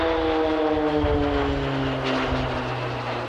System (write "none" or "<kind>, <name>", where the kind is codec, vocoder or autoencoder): none